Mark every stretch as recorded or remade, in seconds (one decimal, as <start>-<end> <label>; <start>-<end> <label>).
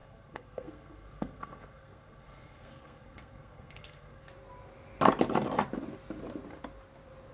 0.0-4.3 remade; 4.3-7.3 recorded